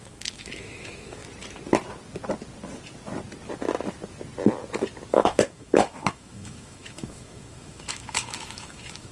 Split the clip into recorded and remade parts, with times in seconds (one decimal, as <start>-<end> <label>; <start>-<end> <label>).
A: 0.0-1.2 remade; 1.2-5.1 recorded; 5.1-9.1 remade